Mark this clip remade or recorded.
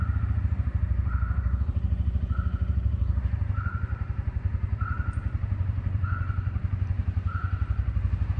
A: remade